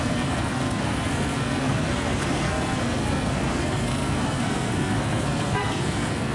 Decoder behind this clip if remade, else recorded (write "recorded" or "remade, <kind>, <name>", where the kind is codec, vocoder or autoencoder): remade, codec, SNAC